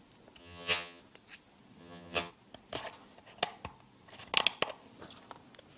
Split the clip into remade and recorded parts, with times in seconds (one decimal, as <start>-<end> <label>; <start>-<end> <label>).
0.0-0.4 recorded; 0.4-1.0 remade; 1.0-1.8 recorded; 1.8-2.3 remade; 2.3-5.8 recorded